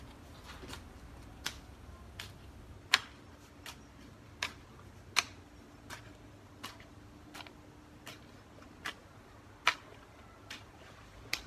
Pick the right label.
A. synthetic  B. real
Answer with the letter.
B